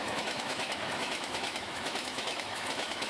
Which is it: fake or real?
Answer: fake